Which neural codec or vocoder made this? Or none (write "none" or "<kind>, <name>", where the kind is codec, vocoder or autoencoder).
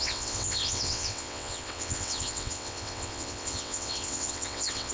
vocoder, WaveNeXt